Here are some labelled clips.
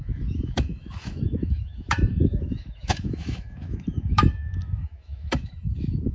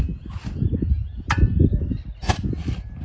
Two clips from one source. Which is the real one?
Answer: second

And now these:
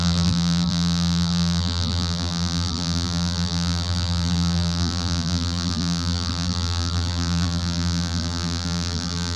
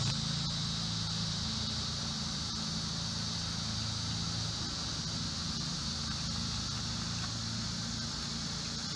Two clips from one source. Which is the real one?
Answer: second